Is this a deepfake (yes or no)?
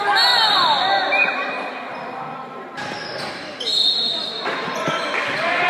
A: no